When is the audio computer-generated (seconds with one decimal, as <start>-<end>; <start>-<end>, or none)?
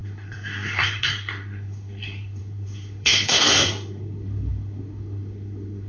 0.0-5.9